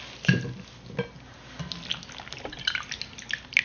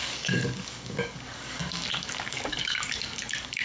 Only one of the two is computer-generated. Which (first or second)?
second